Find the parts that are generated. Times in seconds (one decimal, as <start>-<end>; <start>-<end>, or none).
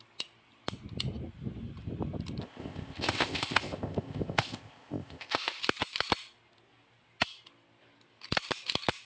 2.4-5.6